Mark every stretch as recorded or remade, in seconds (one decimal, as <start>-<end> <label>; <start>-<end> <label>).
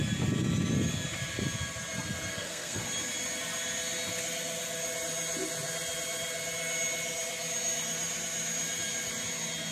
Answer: 0.0-2.3 recorded; 2.3-2.8 remade; 2.8-9.7 recorded